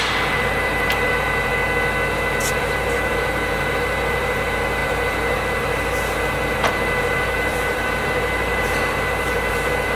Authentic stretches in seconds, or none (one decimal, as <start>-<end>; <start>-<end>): 1.5-2.4